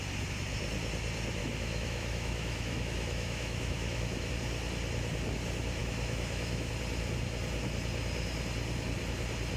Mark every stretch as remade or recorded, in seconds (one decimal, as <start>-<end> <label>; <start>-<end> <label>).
0.0-1.4 recorded; 1.4-4.3 remade; 4.3-5.8 recorded; 5.8-6.7 remade; 6.7-9.6 recorded